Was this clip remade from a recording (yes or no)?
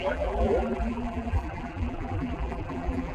yes